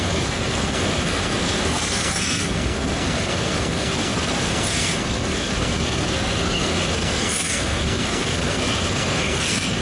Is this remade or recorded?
remade